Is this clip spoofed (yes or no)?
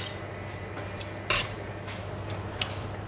no